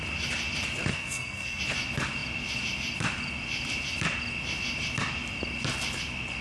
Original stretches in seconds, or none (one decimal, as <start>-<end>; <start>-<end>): 0.0-0.9; 1.6-6.4